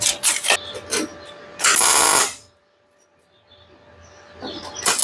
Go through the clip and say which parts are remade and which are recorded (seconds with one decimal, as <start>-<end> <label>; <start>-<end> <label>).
0.0-5.0 recorded